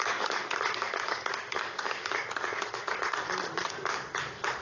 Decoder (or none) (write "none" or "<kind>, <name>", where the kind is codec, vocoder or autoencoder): codec, DAC